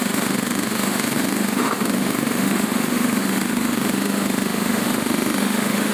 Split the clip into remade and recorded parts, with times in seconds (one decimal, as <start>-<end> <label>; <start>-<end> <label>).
0.0-5.9 remade